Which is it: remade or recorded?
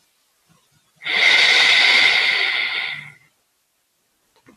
recorded